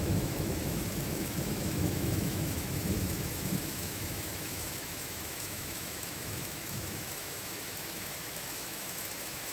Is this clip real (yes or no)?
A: no